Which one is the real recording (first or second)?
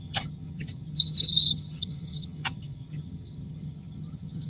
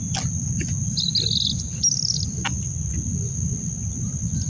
second